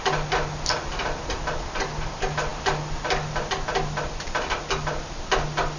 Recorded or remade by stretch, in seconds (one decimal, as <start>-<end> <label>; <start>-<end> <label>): 0.0-5.8 recorded